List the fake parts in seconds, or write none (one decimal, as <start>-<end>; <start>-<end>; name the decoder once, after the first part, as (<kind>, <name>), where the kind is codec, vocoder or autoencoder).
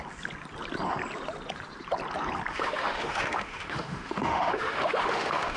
2.5-5.6 (autoencoder, DAC-VAE)